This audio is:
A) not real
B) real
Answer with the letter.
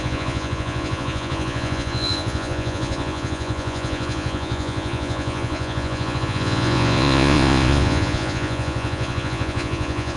A